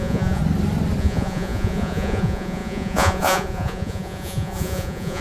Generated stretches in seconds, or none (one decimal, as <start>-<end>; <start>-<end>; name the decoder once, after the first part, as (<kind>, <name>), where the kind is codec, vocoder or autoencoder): 0.0-0.4 (vocoder, Vocos); 1.0-5.2